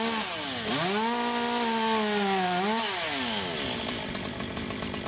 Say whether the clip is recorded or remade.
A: recorded